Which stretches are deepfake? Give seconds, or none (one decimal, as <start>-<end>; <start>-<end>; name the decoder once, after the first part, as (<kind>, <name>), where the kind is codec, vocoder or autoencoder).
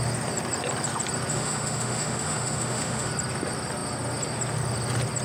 1.3-3.1 (autoencoder, DAC-VAE)